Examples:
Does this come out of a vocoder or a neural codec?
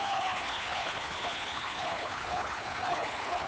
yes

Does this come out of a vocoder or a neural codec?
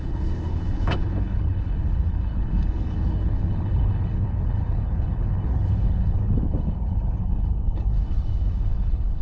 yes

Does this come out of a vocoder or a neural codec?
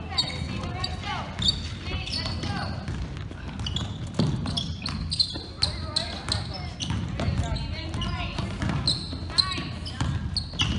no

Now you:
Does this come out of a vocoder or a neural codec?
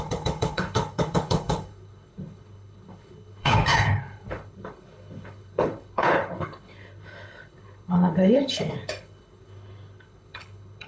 yes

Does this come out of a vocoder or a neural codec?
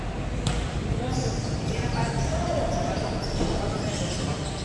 no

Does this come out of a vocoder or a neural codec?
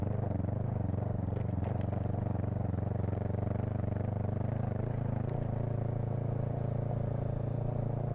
no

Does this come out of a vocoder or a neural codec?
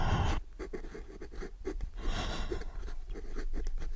no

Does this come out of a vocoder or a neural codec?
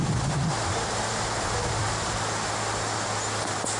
no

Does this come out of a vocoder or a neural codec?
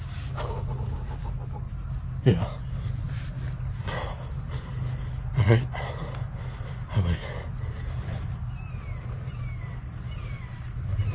no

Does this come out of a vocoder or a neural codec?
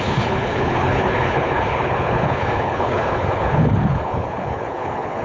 yes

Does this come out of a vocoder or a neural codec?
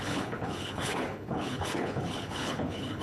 yes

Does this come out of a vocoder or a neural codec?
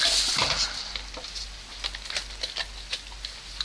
no